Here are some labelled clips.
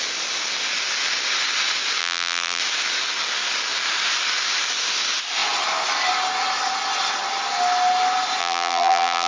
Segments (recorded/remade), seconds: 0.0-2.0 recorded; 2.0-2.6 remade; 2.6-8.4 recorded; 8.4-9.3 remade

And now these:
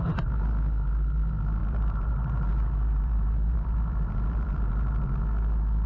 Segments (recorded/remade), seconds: 0.0-1.6 recorded; 1.6-5.1 remade; 5.1-5.9 recorded